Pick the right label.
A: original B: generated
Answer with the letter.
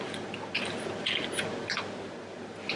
A